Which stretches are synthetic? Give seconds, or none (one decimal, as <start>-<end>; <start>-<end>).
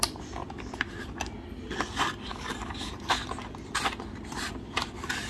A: 2.3-2.9